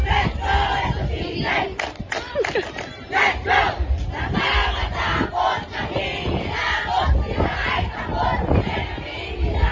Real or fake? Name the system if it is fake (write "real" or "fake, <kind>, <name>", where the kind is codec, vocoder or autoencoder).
real